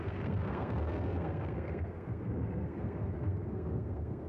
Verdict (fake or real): fake